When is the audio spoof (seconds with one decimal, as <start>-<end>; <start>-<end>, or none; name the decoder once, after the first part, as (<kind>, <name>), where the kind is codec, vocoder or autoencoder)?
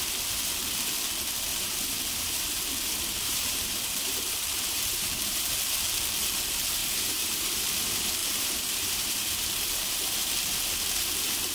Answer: 1.5-5.5 (vocoder, BigVGAN v2); 6.8-7.7; 8.2-10.3